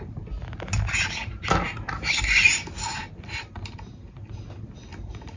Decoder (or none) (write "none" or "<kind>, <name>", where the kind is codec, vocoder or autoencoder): none